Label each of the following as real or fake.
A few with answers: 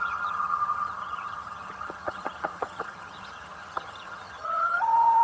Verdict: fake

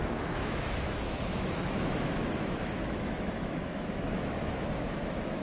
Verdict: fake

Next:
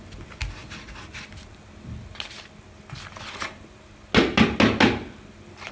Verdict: real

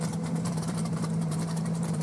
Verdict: fake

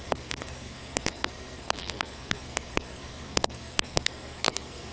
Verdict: fake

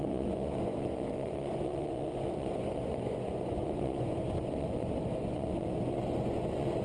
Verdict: fake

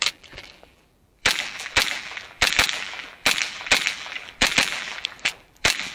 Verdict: fake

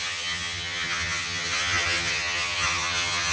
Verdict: fake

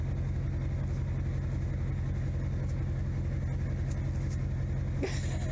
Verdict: real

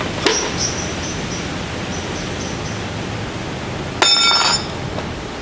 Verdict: real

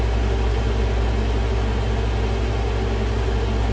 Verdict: real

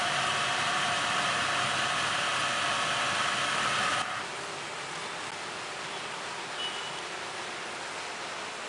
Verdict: real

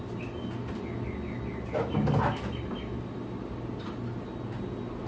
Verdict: real